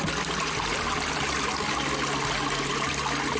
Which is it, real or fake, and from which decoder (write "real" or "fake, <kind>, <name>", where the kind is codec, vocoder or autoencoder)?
real